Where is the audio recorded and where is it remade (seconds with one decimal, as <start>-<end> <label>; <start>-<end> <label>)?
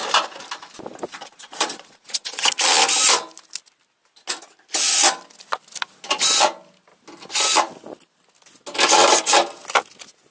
0.0-1.1 recorded; 1.1-2.5 remade; 2.5-10.3 recorded